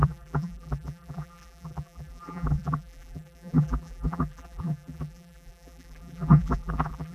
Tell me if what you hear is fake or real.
fake